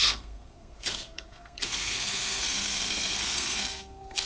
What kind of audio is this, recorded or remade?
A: remade